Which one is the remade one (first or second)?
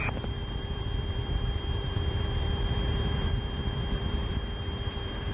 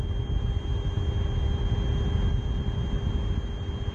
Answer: first